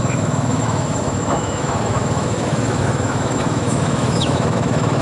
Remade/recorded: remade